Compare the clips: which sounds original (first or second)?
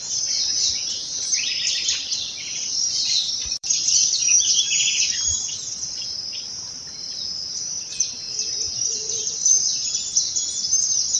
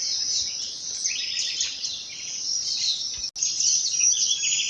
second